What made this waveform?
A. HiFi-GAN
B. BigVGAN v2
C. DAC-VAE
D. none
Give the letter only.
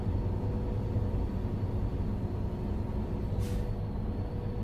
D